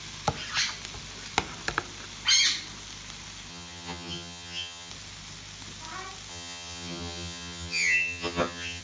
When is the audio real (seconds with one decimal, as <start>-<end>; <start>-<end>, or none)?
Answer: 0.0-3.5; 4.9-6.3